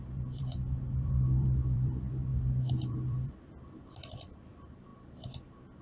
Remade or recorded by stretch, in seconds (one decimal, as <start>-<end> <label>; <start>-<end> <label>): 0.0-2.3 remade; 2.3-2.9 recorded; 2.9-4.9 remade; 4.9-5.8 recorded